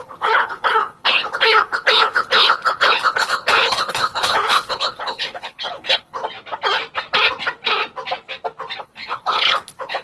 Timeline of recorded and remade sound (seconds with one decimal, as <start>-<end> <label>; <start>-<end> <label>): 0.0-6.2 remade; 6.2-8.8 recorded; 8.8-10.0 remade